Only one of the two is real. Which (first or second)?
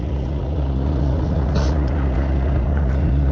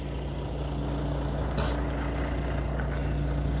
second